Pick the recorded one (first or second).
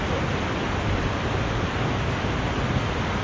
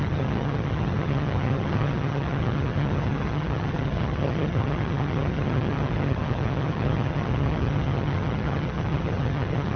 first